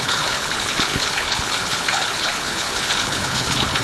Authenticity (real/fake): fake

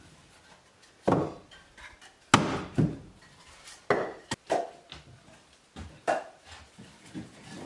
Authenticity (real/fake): real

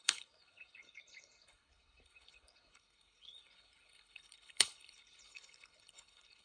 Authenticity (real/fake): fake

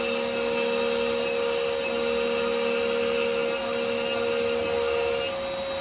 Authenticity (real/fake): real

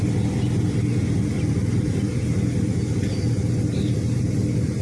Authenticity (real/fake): real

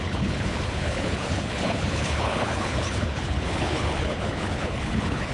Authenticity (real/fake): fake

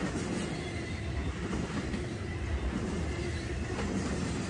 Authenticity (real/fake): real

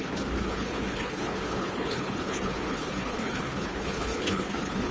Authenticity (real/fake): fake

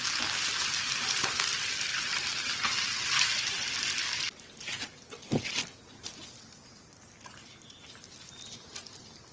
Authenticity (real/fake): real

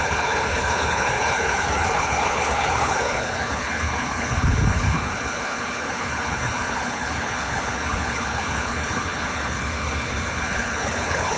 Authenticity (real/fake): fake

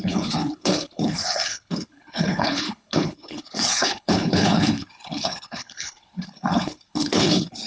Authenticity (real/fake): fake